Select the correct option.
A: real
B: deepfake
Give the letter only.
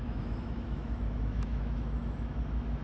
B